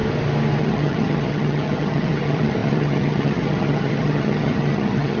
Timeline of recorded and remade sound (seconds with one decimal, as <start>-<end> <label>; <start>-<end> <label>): 0.0-0.6 recorded; 0.6-5.2 remade